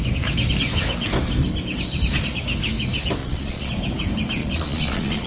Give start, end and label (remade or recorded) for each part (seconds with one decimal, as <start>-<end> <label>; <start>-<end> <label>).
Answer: 0.0-3.2 recorded; 3.2-3.7 remade; 3.7-4.4 recorded; 4.4-5.3 remade